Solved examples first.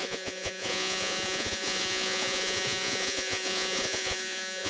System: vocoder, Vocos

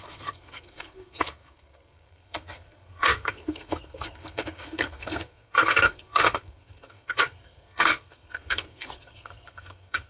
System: codec, SNAC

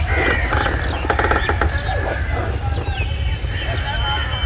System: none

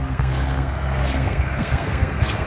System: codec, SNAC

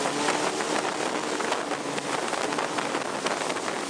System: none